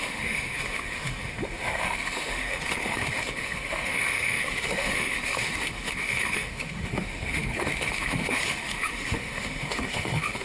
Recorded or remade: remade